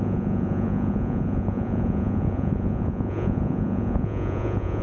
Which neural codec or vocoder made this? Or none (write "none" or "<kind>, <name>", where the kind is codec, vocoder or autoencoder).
vocoder, Vocos